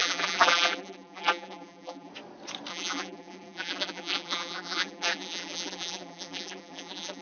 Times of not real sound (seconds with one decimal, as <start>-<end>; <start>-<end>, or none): 0.0-2.1; 2.7-7.2